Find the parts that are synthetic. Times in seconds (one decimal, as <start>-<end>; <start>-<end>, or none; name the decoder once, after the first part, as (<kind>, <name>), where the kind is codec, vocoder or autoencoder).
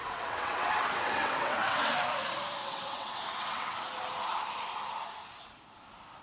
0.0-1.9 (vocoder, WaveNeXt); 2.6-3.8